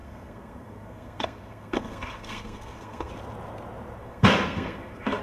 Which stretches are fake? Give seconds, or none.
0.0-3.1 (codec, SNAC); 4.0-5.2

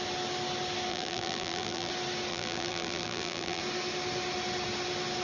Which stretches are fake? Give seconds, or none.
0.9-1.9 (vocoder, BigVGAN v2); 2.3-3.6

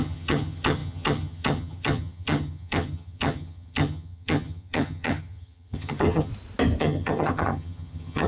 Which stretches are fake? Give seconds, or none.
0.0-6.3 (vocoder, HiFi-GAN); 6.8-8.3